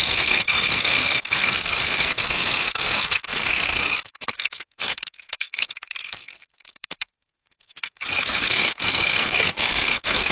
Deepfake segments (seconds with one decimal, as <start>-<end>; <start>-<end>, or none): 0.0-10.3